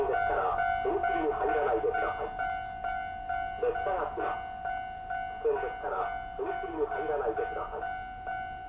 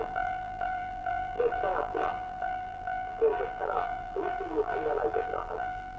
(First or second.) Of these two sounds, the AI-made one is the second